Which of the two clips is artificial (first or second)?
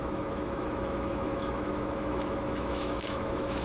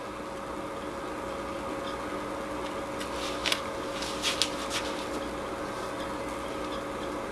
first